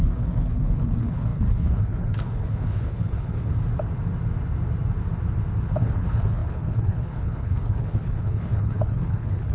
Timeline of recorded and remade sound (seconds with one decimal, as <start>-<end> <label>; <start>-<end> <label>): 0.0-3.5 remade; 3.5-5.7 recorded; 5.7-9.5 remade